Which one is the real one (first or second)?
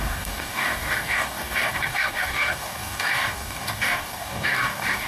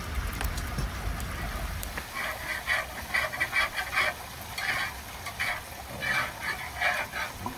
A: second